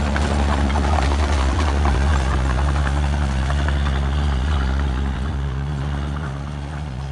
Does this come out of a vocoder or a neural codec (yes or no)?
yes